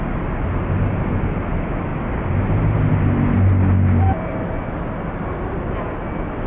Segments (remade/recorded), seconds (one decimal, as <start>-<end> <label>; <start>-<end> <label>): 0.0-6.5 recorded